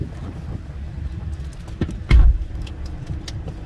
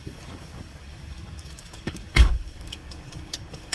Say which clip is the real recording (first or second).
first